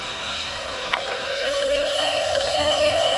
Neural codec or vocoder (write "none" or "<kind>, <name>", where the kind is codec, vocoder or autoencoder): codec, SNAC